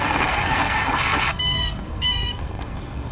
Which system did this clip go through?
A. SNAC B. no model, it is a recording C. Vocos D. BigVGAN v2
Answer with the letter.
A